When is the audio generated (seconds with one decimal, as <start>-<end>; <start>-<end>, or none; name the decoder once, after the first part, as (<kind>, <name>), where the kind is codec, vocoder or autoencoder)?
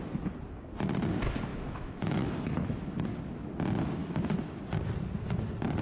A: 1.5-3.0 (autoencoder, DAC-VAE); 4.0-4.6